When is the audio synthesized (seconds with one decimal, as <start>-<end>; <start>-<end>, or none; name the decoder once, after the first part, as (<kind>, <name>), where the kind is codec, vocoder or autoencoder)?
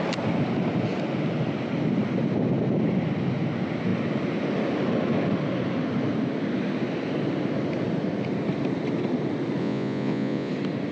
9.6-10.5 (vocoder, Vocos)